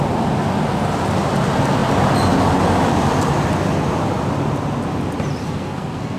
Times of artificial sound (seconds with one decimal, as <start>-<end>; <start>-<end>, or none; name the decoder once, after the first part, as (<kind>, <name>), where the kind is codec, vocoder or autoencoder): 5.4-6.2 (codec, SNAC)